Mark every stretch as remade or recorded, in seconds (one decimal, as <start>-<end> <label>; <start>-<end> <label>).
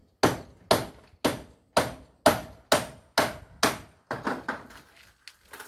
0.0-5.7 recorded